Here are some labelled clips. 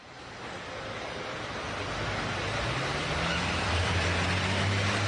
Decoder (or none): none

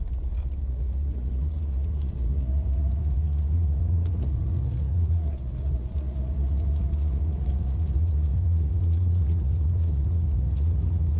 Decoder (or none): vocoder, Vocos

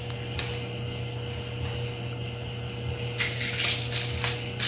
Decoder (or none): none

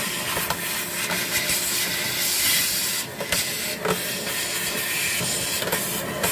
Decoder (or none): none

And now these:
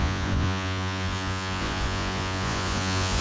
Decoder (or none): vocoder, Vocos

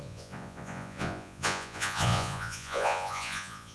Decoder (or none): vocoder, Vocos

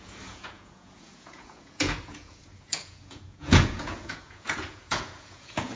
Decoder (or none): vocoder, Vocos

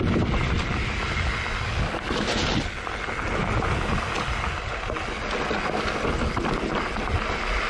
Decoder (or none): none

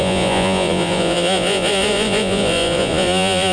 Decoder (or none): vocoder, Vocos